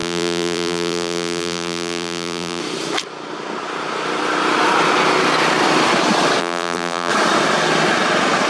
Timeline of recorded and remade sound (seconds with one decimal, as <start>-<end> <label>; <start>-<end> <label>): 0.0-2.6 remade; 2.6-6.4 recorded; 6.4-7.1 remade; 7.1-8.5 recorded